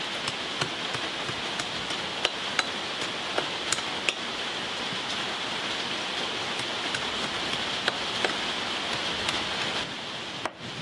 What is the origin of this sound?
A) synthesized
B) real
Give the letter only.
B